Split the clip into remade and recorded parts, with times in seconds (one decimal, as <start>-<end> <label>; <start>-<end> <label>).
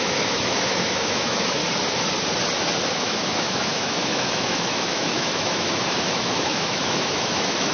0.0-1.6 remade; 1.6-2.9 recorded; 2.9-7.7 remade